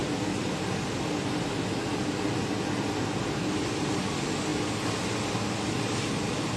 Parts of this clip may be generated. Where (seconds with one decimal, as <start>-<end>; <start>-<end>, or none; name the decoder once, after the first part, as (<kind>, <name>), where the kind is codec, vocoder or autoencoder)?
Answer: none